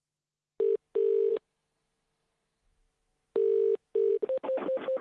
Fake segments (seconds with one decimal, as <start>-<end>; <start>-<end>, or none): 1.3-2.7